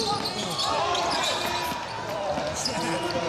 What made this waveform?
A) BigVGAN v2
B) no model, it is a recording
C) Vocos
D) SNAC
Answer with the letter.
B